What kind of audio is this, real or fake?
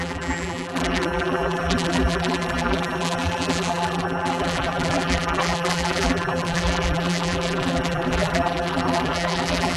fake